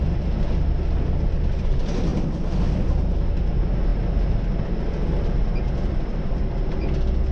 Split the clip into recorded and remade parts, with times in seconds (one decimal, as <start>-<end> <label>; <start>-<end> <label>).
0.0-7.3 recorded